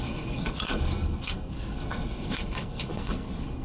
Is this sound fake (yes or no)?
yes